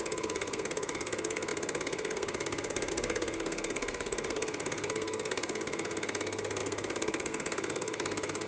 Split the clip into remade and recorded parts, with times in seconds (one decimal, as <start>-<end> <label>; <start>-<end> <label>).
0.0-8.5 remade